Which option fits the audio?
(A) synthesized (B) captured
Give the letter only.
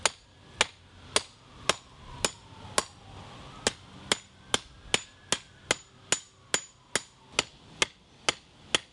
B